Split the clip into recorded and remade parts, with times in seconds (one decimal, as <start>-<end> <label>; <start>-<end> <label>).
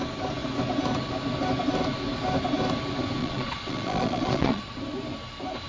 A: 0.0-3.2 recorded; 3.2-4.8 remade; 4.8-5.7 recorded